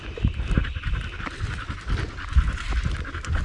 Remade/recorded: recorded